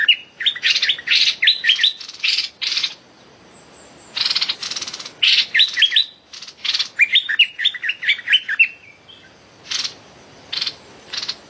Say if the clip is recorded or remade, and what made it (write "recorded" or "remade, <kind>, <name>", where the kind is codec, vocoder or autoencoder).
recorded